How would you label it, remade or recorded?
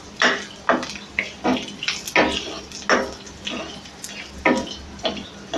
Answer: recorded